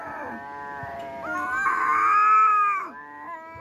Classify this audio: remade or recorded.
recorded